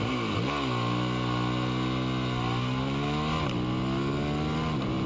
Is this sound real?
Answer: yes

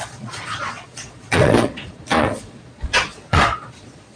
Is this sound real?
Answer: no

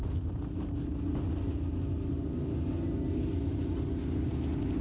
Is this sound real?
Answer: yes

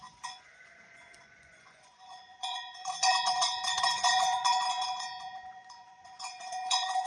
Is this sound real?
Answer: no